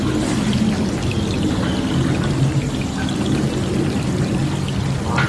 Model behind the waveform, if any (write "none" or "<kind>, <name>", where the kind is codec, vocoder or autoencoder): none